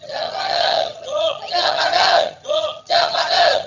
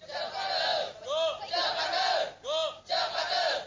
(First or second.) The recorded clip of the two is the second